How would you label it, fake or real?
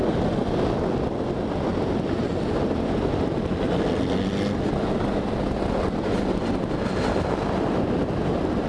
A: real